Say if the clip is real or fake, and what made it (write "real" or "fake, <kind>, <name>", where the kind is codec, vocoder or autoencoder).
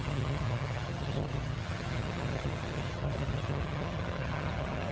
fake, vocoder, HiFi-GAN